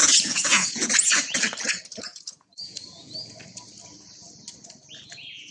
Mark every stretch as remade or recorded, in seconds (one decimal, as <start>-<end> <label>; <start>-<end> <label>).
0.0-1.1 remade; 1.1-2.1 recorded; 2.1-3.1 remade; 3.1-5.5 recorded